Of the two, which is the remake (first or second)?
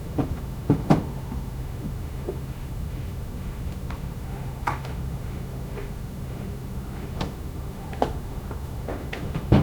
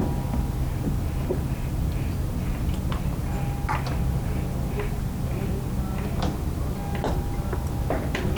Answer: first